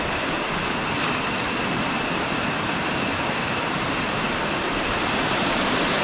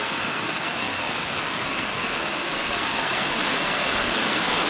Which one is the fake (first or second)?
second